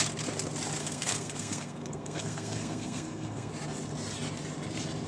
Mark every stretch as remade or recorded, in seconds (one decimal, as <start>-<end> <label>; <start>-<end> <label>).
0.0-0.8 recorded; 0.8-3.5 remade; 3.5-5.1 recorded